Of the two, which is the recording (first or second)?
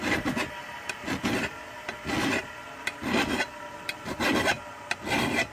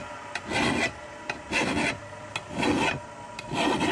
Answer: second